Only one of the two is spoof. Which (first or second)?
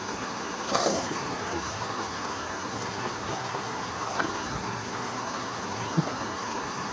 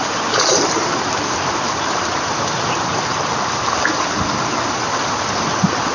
first